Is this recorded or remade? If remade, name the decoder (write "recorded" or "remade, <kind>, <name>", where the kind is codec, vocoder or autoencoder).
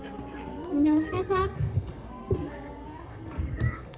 remade, codec, SNAC